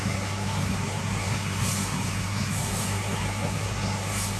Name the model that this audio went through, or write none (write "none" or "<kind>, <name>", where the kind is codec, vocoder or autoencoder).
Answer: codec, SNAC